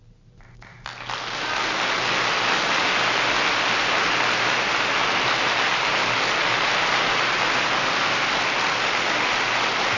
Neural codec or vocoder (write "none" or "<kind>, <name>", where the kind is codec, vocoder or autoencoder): none